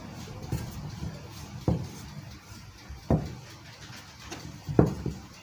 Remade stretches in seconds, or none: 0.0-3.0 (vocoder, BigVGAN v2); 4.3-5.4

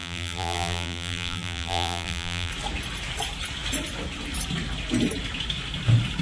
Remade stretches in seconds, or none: 0.0-2.5 (vocoder, BigVGAN v2)

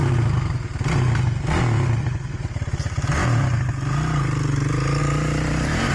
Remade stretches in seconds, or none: 2.0-3.2 (vocoder, BigVGAN v2); 5.0-5.9

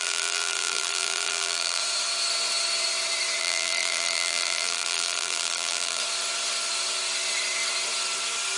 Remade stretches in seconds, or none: 0.0-1.8 (vocoder, BigVGAN v2); 3.4-6.0

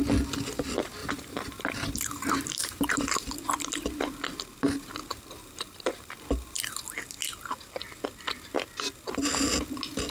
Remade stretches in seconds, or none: 1.0-3.3 (vocoder, BigVGAN v2); 5.1-6.8

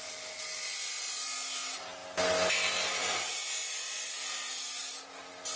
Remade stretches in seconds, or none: none

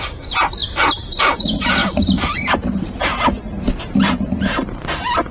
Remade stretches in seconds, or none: 0.0-0.6 (vocoder, BigVGAN v2); 1.2-5.3